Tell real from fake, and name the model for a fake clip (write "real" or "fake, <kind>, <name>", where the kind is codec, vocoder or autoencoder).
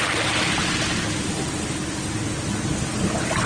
real